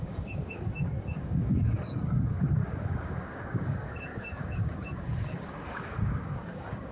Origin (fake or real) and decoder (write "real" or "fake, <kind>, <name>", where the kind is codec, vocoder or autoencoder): fake, codec, DAC